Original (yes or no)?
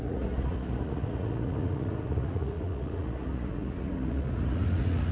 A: no